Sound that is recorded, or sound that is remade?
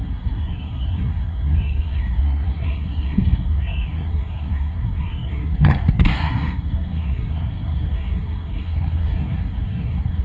remade